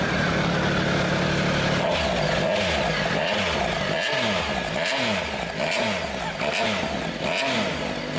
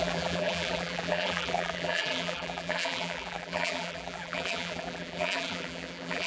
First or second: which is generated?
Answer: second